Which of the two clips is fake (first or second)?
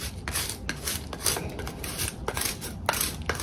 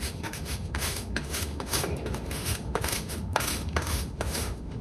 second